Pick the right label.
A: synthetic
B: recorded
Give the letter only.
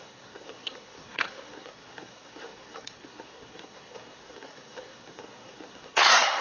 A